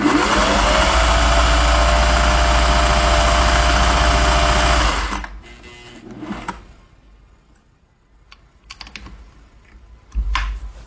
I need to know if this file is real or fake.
real